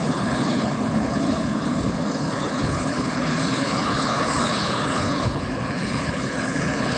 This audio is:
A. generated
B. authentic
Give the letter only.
A